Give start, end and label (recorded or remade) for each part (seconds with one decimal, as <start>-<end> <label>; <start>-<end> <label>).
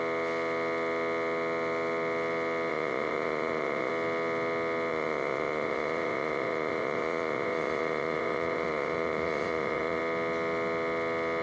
0.0-2.7 recorded; 2.7-3.9 remade; 3.9-4.9 recorded; 4.9-10.0 remade; 10.0-11.4 recorded